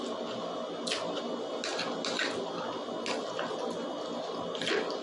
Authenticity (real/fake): real